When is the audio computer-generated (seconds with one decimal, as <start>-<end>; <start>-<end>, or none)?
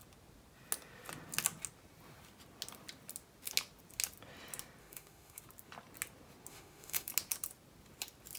4.8-5.4; 6.5-7.1